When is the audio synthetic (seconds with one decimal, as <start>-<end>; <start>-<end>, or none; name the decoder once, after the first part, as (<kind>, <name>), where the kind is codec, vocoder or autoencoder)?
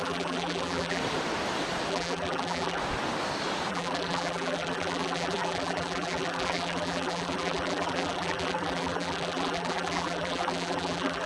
0.0-1.0 (vocoder, BigVGAN v2); 1.9-2.8; 3.7-11.3